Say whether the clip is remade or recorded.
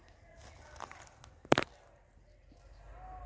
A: recorded